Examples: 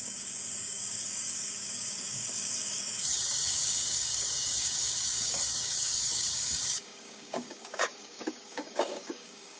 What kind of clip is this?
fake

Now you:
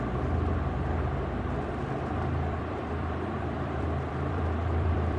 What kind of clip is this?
fake